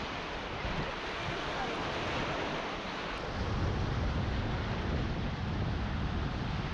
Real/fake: real